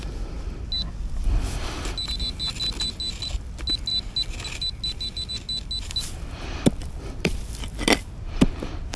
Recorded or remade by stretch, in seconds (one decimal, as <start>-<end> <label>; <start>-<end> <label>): 0.0-9.0 recorded